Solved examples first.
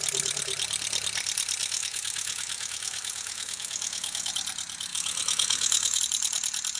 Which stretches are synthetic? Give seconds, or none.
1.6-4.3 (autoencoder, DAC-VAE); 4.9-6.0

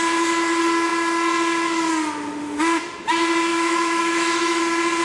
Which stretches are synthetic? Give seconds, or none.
3.5-4.6 (autoencoder, DAC-VAE)

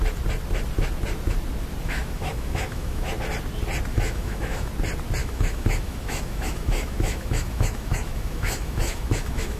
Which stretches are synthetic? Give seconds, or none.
1.8-3.1 (autoencoder, DAC-VAE); 3.9-4.7; 5.2-9.6

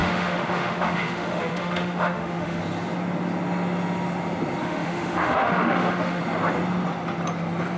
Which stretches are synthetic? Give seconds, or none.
0.0-2.6 (autoencoder, DAC-VAE); 4.6-6.2